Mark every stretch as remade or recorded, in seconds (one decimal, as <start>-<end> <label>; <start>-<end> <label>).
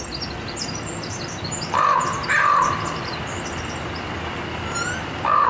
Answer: 0.0-2.2 recorded; 2.2-2.8 remade; 2.8-5.5 recorded